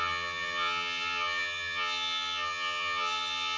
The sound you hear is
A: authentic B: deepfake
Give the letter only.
B